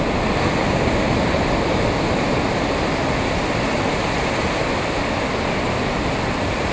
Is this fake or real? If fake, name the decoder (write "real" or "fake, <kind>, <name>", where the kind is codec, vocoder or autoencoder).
real